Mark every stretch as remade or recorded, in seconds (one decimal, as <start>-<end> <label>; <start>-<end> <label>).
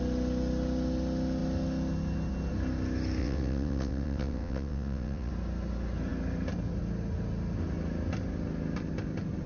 0.0-3.2 recorded; 3.2-5.3 remade; 5.3-9.5 recorded